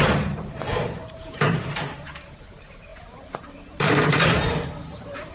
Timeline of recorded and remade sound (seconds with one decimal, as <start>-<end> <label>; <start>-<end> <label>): 0.0-5.3 remade